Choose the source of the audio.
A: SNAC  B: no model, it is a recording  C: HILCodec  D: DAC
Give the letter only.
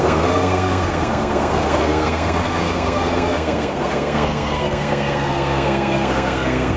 A